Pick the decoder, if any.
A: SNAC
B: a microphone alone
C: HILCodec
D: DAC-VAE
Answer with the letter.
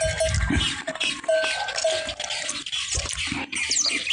B